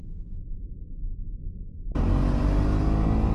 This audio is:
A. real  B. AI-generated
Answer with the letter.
A